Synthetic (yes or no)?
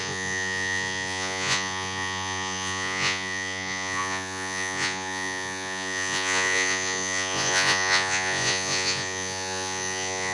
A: yes